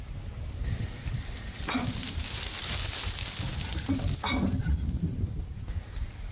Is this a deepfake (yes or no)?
no